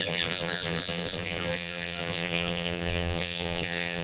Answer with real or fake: fake